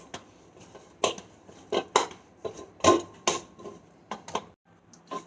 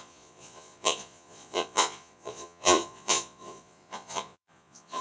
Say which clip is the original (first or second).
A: first